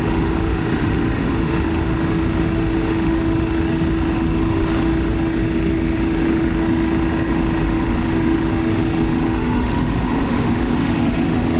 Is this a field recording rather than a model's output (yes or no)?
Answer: no